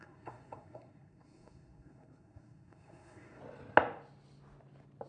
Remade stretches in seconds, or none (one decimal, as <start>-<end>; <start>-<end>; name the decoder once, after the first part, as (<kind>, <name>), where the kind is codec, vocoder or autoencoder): 0.0-3.4 (codec, SNAC)

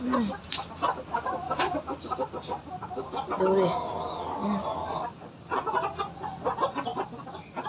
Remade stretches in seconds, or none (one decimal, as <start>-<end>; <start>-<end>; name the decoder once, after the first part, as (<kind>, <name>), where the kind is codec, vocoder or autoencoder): none

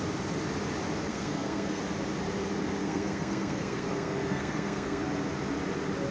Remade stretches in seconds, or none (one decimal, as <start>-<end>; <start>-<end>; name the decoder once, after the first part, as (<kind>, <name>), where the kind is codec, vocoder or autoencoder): 1.1-1.8 (codec, SNAC); 2.8-5.0

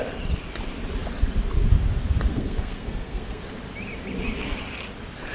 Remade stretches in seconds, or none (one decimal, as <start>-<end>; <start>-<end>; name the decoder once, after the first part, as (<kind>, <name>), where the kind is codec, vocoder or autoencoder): 2.3-3.4 (codec, SNAC)

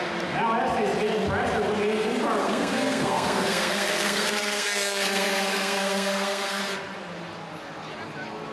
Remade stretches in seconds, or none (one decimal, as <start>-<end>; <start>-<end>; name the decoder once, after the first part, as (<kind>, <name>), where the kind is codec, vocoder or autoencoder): 2.4-6.6 (codec, SNAC)

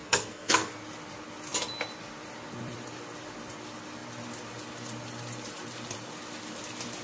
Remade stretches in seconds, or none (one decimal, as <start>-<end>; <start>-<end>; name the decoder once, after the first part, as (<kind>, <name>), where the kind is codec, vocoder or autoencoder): 0.0-0.7 (codec, SNAC)